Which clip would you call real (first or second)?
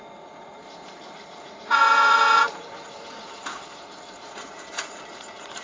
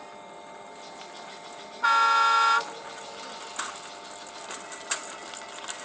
second